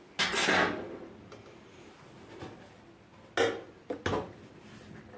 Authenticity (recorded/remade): recorded